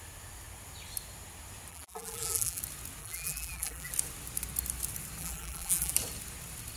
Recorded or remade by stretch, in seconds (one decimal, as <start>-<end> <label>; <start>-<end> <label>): 0.0-1.7 recorded; 1.7-2.6 remade; 2.6-3.0 recorded; 3.0-3.9 remade; 3.9-5.2 recorded; 5.2-5.9 remade; 5.9-6.8 recorded